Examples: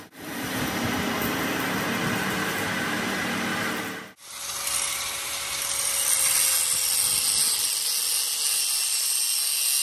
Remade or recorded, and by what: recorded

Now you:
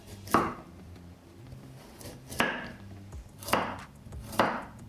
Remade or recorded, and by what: remade, vocoder, BigVGAN v2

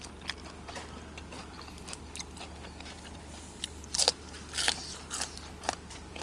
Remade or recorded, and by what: recorded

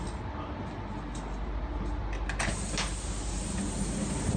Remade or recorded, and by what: recorded